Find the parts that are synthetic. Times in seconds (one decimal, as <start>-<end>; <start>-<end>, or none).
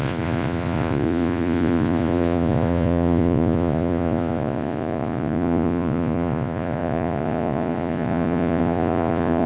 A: 0.0-9.5